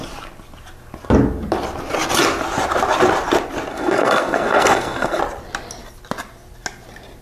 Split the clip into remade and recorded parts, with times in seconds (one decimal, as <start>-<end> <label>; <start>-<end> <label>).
0.0-3.7 recorded; 3.7-5.2 remade; 5.2-7.2 recorded